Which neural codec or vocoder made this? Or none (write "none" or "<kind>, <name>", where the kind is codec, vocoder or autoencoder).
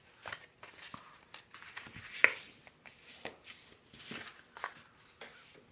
none